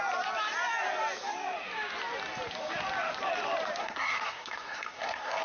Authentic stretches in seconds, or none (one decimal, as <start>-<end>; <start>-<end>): 0.0-3.8